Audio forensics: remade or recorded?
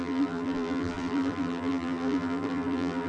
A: remade